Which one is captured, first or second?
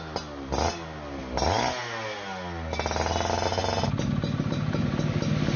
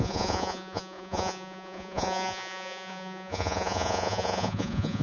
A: first